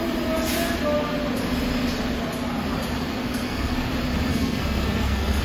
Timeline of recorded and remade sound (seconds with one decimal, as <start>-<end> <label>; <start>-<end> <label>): 0.0-3.1 recorded; 3.1-3.9 remade; 3.9-4.3 recorded; 4.3-5.4 remade